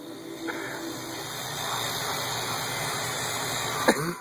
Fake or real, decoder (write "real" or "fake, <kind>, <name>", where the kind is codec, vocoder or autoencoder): real